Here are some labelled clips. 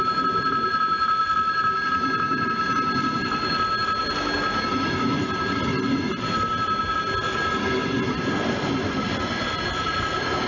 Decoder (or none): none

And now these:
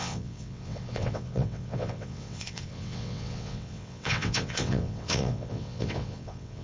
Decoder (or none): vocoder, WaveNeXt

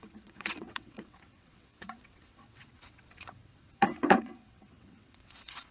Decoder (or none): vocoder, WaveNeXt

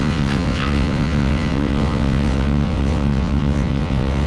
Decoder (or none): vocoder, WaveNeXt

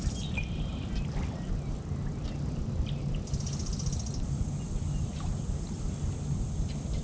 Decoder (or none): none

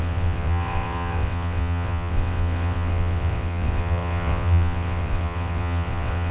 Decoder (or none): vocoder, WaveNeXt